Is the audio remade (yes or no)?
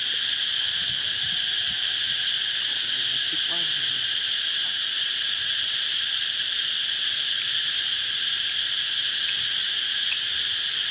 no